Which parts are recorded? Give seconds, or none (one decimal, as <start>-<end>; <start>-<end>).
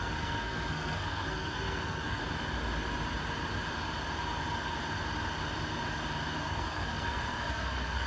2.2-6.4